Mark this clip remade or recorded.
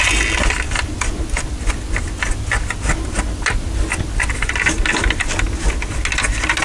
recorded